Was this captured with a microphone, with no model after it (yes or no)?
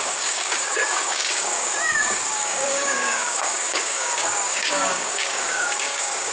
no